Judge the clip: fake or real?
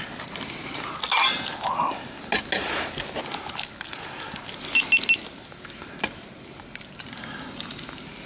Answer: real